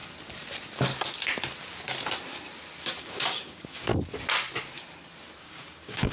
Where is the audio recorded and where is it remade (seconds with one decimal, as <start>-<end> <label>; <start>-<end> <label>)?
0.0-3.0 recorded; 3.0-3.9 remade; 3.9-5.4 recorded; 5.4-6.1 remade